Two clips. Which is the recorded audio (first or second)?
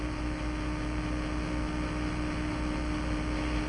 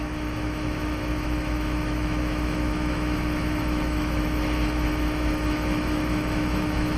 first